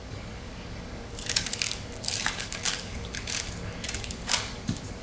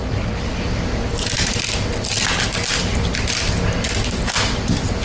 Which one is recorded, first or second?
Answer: second